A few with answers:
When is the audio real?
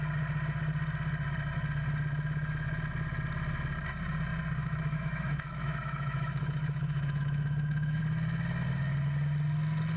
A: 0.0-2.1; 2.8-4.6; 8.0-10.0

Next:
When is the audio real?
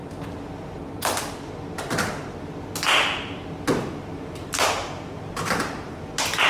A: 0.0-3.9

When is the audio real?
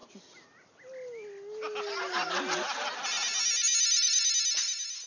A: 0.0-5.1